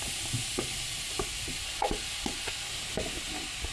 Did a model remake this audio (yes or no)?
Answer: no